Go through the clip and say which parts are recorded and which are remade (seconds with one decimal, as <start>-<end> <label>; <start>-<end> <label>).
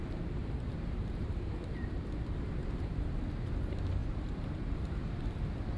0.0-0.4 recorded; 0.4-1.9 remade; 1.9-2.6 recorded; 2.6-3.3 remade; 3.3-4.0 recorded; 4.0-5.2 remade; 5.2-5.8 recorded